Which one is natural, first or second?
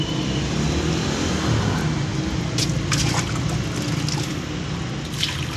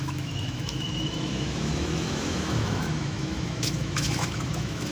first